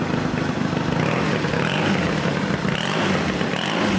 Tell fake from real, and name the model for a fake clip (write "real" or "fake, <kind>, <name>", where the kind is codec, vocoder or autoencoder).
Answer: real